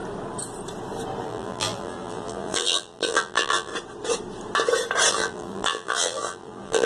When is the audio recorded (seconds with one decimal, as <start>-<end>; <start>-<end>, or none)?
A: 0.0-1.2; 3.7-5.1